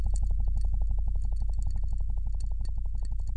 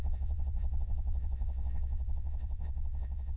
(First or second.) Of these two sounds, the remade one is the second